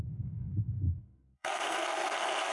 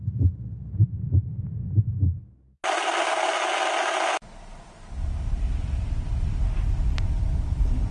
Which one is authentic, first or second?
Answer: second